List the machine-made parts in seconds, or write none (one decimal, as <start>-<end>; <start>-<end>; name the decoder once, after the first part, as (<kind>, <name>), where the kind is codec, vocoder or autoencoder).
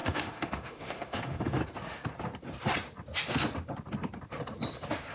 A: 0.0-1.6 (autoencoder, DAC-VAE)